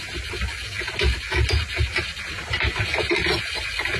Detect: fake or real real